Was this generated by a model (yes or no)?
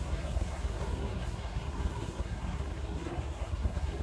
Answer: yes